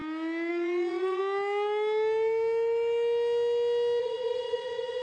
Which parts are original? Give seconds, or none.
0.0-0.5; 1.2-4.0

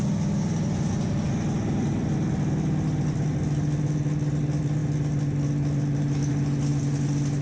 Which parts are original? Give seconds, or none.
0.0-7.4

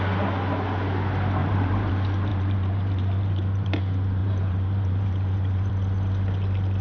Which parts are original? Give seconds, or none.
0.0-1.4; 1.9-2.3; 3.8-4.2; 5.7-6.8

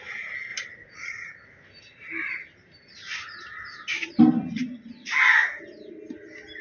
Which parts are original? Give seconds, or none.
0.0-0.5; 4.2-6.6

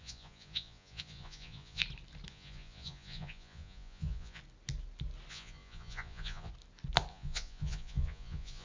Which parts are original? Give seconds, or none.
1.8-2.3; 4.4-5.3; 6.5-7.1

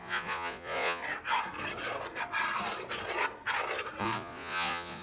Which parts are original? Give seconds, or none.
1.0-4.0

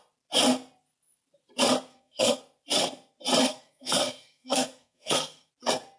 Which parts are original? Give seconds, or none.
0.0-1.9; 2.4-3.4; 5.5-6.0